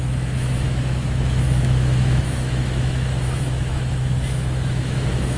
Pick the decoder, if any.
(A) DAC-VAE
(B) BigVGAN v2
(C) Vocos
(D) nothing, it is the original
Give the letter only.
A